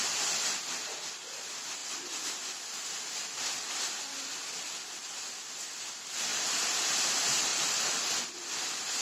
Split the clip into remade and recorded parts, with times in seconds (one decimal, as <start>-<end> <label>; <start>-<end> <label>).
0.0-6.3 recorded; 6.3-7.0 remade; 7.0-7.5 recorded; 7.5-8.3 remade; 8.3-9.0 recorded